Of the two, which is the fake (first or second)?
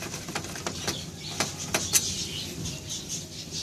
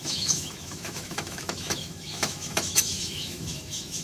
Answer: second